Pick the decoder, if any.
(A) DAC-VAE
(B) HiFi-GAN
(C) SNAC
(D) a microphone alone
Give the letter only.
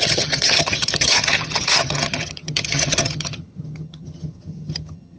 B